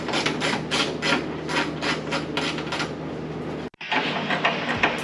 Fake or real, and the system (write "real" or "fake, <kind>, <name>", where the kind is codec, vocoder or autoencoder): real